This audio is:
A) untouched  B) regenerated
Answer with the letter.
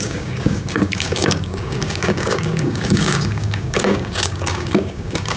B